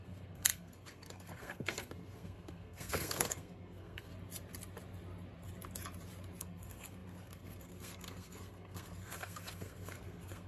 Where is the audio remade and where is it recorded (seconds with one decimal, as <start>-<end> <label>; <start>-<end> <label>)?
0.0-4.1 remade; 4.1-6.4 recorded; 6.4-10.5 remade